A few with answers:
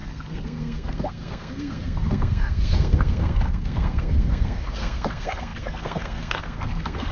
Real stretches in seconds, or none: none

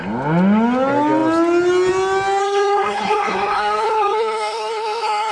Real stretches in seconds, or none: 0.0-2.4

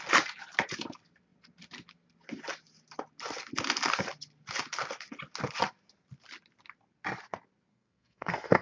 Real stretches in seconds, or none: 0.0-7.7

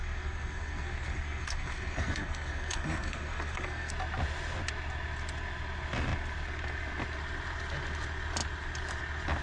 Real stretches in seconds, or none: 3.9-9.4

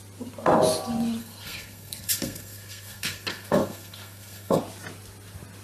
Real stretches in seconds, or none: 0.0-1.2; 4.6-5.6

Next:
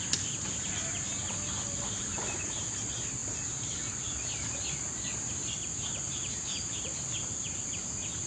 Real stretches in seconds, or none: 0.0-8.3